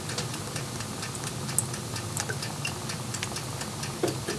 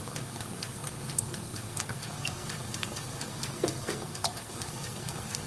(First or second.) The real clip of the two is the first